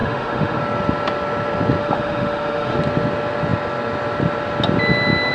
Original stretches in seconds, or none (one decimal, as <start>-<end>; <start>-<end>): 0.6-1.8; 2.8-5.3

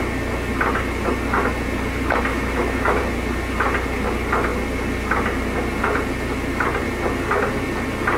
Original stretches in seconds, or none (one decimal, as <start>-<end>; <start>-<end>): 0.0-2.3; 3.0-8.2

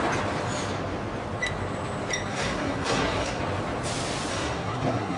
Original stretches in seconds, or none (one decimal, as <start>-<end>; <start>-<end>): 0.0-2.3; 3.4-4.3

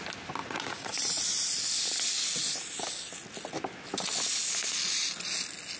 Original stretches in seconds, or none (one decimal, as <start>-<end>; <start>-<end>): 0.0-0.4; 1.2-5.8

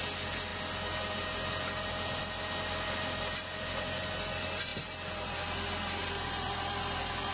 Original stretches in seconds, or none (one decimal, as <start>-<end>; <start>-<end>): 0.0-7.3

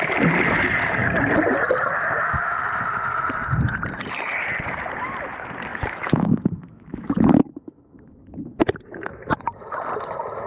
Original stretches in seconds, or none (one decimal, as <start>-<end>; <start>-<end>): 0.0-5.7; 8.6-10.5

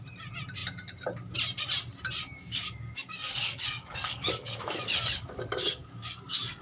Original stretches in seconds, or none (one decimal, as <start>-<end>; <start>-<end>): 0.0-2.2